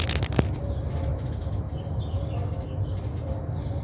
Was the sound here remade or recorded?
recorded